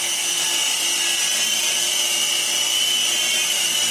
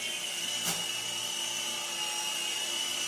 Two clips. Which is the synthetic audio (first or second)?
first